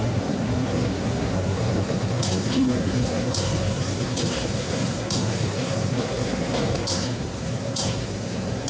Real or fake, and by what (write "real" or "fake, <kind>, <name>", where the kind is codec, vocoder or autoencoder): fake, codec, SNAC